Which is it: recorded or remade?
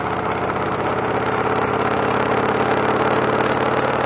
recorded